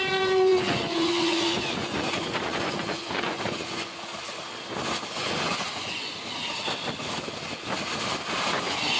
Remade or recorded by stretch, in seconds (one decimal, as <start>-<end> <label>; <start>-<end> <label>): 0.0-4.1 remade; 4.1-5.1 recorded; 5.1-6.1 remade; 6.1-8.5 recorded; 8.5-9.0 remade